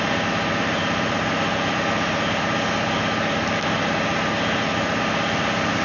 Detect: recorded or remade recorded